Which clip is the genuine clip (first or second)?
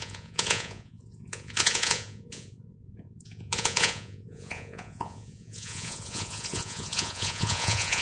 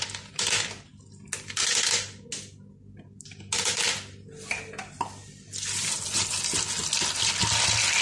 second